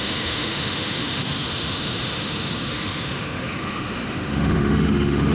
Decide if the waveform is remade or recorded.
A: remade